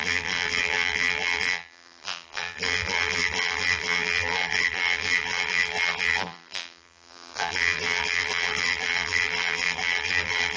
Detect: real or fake fake